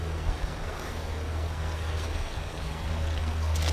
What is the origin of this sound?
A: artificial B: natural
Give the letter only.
A